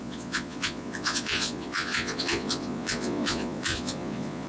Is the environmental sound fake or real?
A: fake